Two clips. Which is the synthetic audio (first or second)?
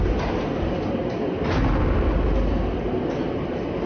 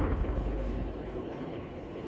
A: second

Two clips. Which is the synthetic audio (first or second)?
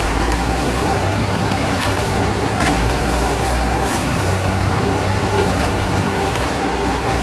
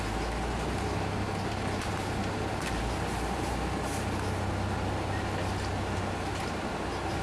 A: first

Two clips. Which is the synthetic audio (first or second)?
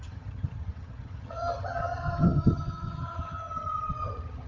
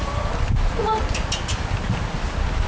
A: first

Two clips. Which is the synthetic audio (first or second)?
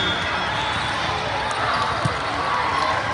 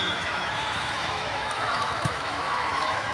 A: second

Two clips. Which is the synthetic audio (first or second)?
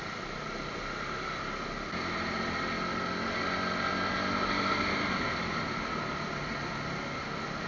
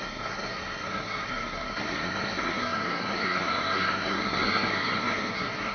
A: second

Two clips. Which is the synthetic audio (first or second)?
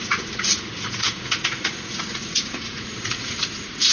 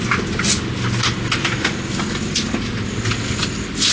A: first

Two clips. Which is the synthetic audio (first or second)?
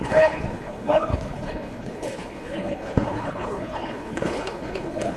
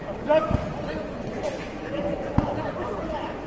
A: first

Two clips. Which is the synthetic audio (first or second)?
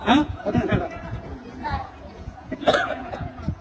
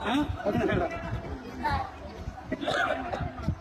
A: first